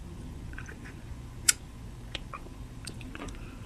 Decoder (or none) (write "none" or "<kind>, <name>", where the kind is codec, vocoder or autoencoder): vocoder, Vocos